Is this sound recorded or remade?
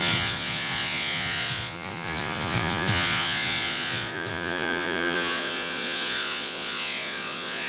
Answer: remade